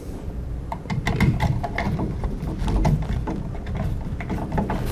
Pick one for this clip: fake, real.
real